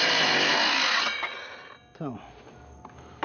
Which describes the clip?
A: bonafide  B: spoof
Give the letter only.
A